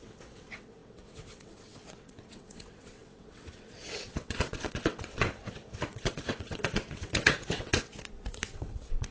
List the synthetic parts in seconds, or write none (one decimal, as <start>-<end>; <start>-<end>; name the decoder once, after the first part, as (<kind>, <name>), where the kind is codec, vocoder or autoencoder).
0.0-7.9 (vocoder, WaveNeXt); 8.5-9.1